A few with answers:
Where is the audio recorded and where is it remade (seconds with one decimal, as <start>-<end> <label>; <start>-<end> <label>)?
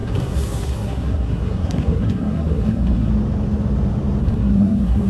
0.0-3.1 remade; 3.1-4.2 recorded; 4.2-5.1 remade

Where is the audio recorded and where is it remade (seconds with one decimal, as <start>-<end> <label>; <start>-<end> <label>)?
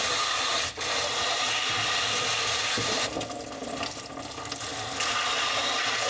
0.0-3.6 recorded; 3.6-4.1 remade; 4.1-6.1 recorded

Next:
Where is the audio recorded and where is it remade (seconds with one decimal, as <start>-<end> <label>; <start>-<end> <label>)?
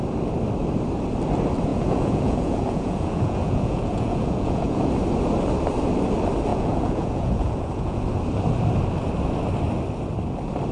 0.0-1.7 recorded; 1.7-4.9 remade; 4.9-6.5 recorded; 6.5-8.0 remade; 8.0-10.7 recorded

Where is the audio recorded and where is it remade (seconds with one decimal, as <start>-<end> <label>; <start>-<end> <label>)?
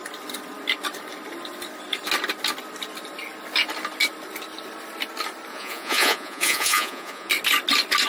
0.0-5.5 recorded; 5.5-7.3 remade; 7.3-8.1 recorded